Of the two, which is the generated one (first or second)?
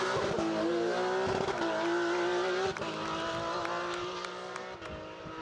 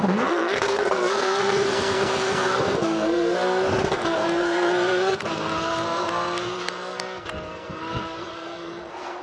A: second